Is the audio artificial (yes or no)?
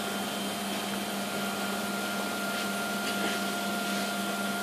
no